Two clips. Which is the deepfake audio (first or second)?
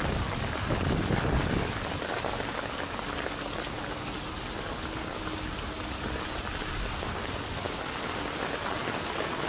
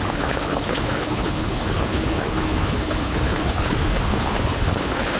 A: second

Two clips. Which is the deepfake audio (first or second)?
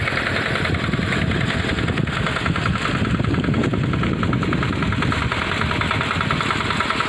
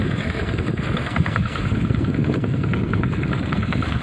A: second